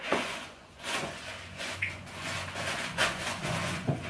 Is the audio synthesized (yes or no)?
yes